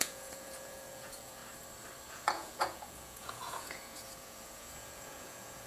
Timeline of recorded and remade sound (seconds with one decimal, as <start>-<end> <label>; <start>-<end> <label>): 0.0-1.4 remade; 1.4-2.1 recorded; 2.1-5.7 remade